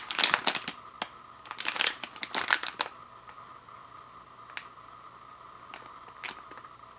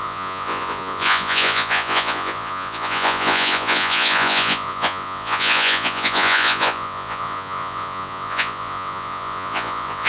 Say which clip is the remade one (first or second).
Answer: second